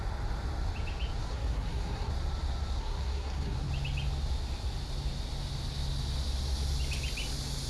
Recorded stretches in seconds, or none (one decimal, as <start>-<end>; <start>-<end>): 0.0-1.2; 2.1-2.8; 3.7-7.7